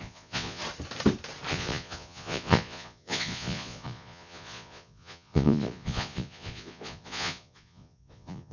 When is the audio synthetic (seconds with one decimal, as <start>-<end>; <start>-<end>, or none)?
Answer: 0.0-0.6; 1.5-8.5